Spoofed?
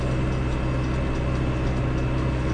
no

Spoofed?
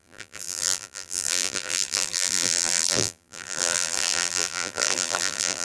yes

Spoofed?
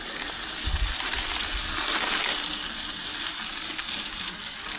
no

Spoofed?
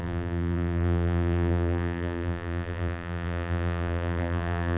yes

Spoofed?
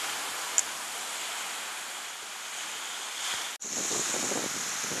no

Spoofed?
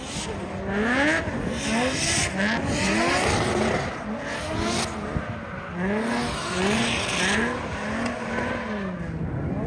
no